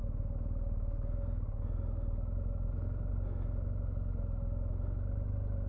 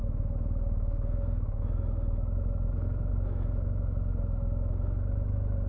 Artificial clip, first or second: second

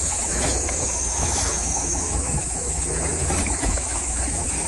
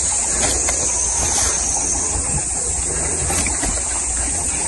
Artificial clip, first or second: first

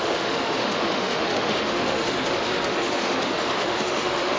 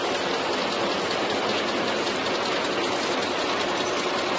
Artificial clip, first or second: first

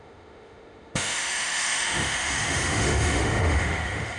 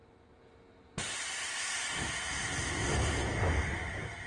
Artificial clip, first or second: first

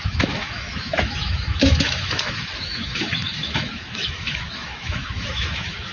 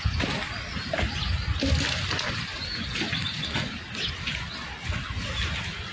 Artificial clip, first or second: first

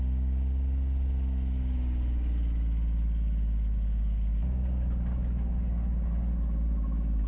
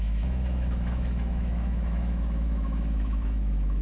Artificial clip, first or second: second